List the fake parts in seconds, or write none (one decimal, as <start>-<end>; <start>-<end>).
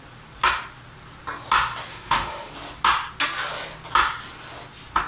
1.9-2.5